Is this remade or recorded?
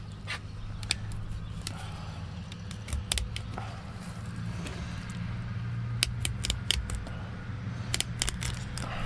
recorded